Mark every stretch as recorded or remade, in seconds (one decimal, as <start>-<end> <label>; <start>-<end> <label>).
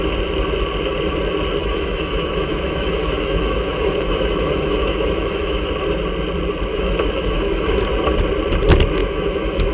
0.0-1.6 recorded; 1.6-5.7 remade; 5.7-6.7 recorded; 6.7-7.7 remade; 7.7-9.0 recorded; 9.0-9.7 remade